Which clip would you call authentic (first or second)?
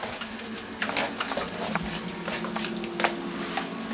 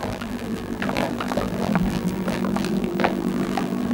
first